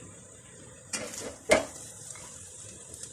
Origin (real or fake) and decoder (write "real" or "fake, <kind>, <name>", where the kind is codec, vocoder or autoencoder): fake, vocoder, BigVGAN v2